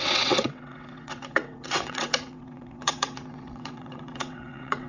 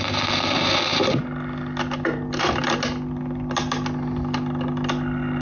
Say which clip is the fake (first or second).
first